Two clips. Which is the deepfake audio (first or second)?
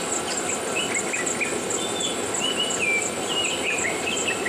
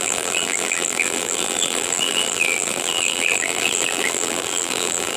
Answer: second